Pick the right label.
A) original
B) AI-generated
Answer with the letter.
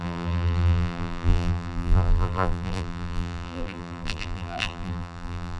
B